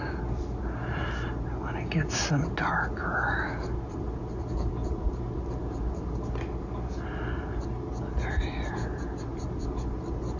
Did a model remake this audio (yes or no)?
no